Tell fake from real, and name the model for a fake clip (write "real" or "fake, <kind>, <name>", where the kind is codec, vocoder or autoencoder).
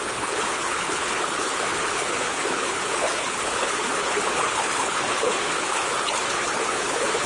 fake, codec, HILCodec